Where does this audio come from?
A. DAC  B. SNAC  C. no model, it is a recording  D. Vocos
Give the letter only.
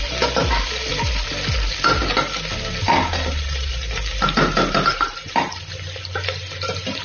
C